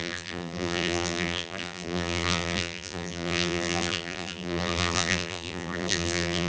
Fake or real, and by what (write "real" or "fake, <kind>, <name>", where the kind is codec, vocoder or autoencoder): fake, vocoder, BigVGAN v2